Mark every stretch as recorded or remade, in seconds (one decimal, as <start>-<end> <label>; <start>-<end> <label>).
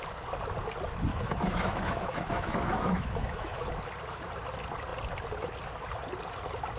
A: 0.0-1.1 recorded; 1.1-3.7 remade; 3.7-6.8 recorded